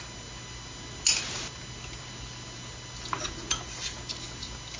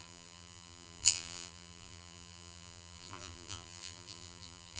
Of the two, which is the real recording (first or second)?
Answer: first